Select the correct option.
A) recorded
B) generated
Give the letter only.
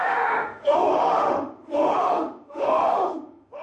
B